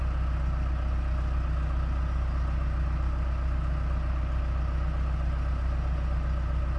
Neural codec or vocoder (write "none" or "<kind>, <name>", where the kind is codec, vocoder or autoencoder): none